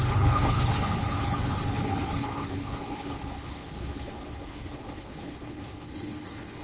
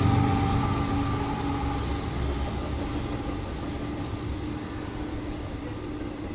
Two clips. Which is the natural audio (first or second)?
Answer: second